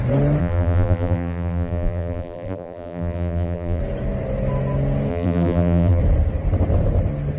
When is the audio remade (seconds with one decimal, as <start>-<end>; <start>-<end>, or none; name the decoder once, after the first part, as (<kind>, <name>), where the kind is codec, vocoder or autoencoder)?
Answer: 0.4-3.8 (vocoder, BigVGAN v2); 5.1-6.0